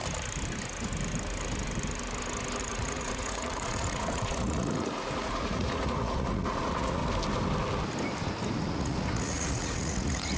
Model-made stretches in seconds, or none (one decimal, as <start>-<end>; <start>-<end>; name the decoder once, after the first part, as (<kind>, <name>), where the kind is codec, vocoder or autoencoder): 2.6-7.0 (vocoder, Vocos); 8.7-10.4